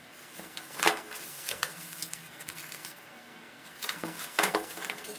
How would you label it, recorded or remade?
remade